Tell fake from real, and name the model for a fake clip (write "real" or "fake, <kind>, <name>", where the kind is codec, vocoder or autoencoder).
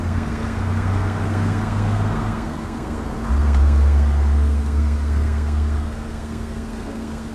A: fake, codec, SNAC